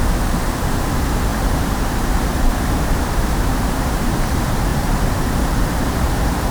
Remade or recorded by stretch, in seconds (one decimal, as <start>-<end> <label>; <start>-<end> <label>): 0.0-6.5 remade